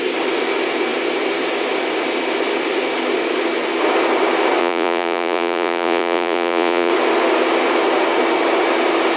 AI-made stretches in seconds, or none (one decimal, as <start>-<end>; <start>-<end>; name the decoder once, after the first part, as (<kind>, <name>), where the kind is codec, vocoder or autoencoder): 4.6-6.9 (vocoder, Vocos)